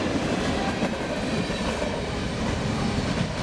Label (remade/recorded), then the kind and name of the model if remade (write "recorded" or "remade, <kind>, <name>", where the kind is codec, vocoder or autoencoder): remade, vocoder, BigVGAN v2